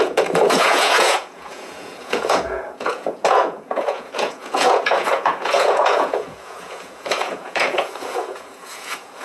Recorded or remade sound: remade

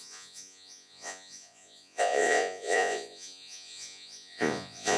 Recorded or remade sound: remade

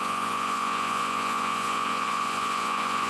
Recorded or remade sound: remade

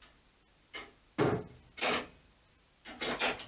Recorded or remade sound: recorded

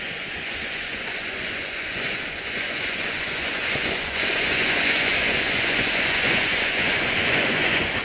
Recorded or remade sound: remade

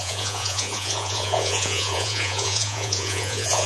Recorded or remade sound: remade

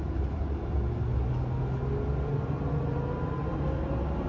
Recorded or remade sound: recorded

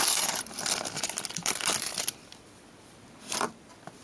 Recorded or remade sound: recorded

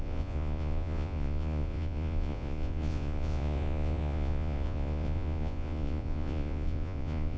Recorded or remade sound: remade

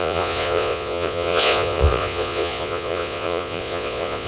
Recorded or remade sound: remade